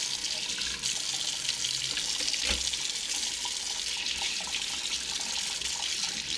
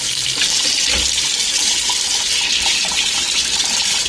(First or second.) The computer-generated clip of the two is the second